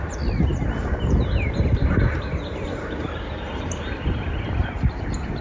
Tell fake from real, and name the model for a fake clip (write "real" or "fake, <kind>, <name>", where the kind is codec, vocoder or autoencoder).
fake, vocoder, BigVGAN v2